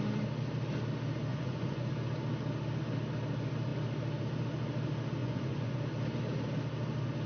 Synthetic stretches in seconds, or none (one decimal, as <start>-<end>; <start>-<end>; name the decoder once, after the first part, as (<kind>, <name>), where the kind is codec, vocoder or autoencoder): 1.3-1.9 (vocoder, Vocos); 5.2-5.8